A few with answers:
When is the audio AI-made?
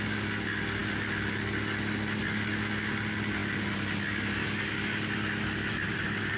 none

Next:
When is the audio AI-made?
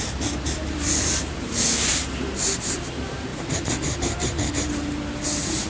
0.0-5.7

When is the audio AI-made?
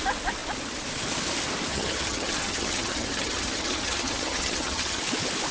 1.7-5.0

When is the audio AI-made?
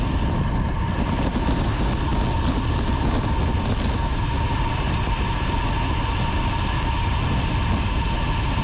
none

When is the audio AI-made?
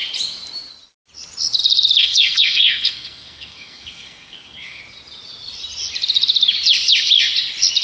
2.0-4.8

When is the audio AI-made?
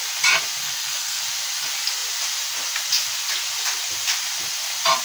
0.6-1.2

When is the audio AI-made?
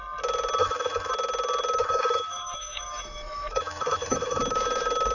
0.6-1.1; 1.8-4.4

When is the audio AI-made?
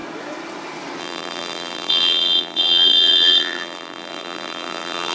1.0-5.1